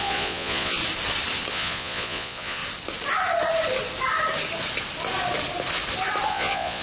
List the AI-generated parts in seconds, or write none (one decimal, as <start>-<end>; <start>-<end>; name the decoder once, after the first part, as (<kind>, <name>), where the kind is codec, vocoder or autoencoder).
0.0-0.8 (vocoder, Vocos); 1.5-2.6; 6.3-6.8